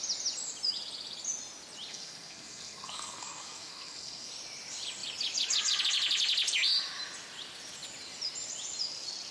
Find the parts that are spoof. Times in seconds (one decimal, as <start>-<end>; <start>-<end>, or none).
1.9-4.3